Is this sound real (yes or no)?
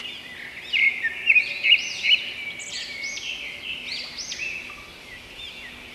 yes